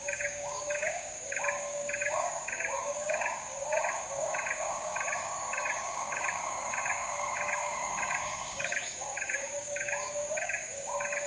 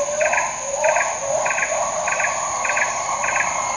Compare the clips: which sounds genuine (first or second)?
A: second